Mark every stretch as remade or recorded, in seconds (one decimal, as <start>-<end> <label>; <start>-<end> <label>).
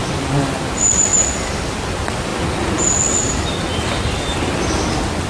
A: 0.0-5.3 recorded